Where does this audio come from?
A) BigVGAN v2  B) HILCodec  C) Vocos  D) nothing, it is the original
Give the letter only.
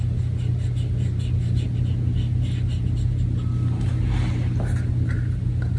D